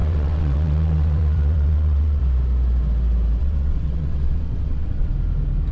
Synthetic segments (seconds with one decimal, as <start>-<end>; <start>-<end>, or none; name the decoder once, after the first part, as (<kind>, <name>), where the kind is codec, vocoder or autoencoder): 0.0-2.2 (vocoder, WaveNeXt); 3.4-5.1